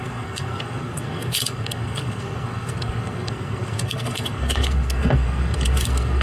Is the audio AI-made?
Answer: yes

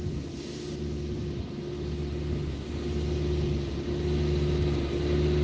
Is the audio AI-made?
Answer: no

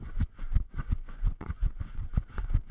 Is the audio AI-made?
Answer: yes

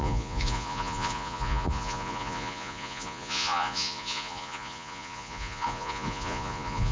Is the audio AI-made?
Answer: yes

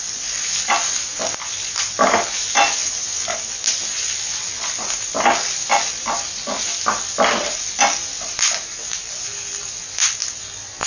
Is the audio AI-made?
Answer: no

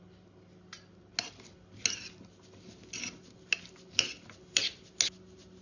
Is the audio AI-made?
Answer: no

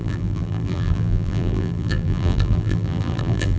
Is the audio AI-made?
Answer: yes